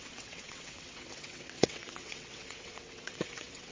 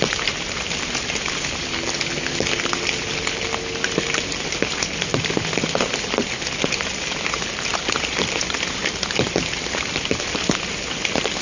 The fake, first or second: first